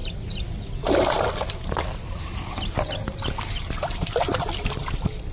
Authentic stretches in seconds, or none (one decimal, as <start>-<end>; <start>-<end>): 0.0-5.3